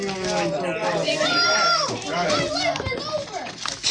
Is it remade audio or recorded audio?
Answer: recorded